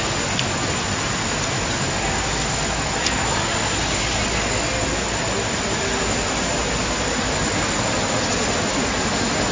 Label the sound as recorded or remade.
recorded